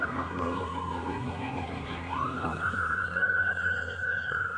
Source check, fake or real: fake